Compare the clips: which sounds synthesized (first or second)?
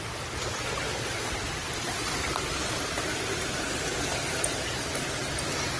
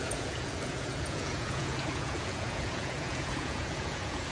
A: second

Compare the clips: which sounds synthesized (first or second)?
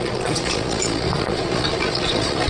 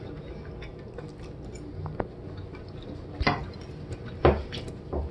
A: first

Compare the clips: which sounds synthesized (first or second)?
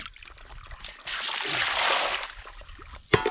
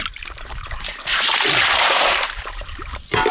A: second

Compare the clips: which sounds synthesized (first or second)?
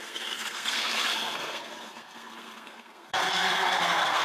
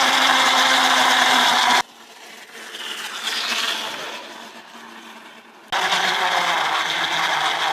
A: first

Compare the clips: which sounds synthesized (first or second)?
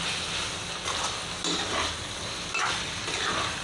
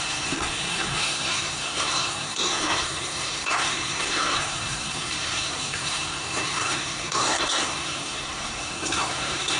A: second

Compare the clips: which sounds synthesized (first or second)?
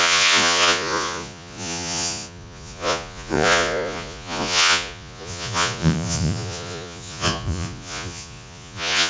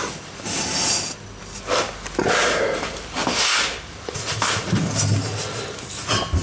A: first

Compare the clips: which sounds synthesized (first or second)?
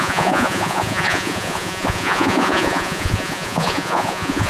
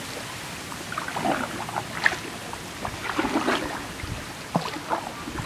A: first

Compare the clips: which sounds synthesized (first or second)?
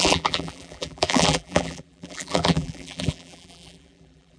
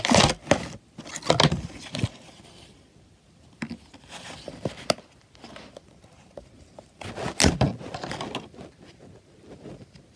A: first